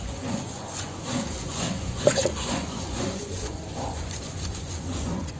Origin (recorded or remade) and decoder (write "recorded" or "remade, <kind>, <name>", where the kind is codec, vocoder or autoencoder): remade, vocoder, Vocos